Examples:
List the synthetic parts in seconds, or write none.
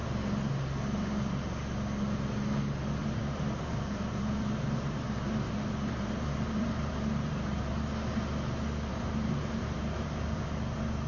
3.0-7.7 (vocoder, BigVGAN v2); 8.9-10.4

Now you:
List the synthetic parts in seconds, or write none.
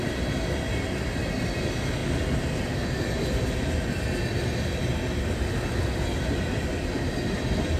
none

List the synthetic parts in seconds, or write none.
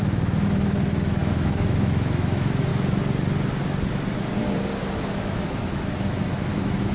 0.0-2.7 (autoencoder, DAC-VAE); 4.9-6.9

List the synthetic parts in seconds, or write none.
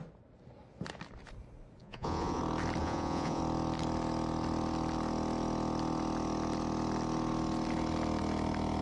1.8-2.4 (vocoder, Vocos); 2.8-3.4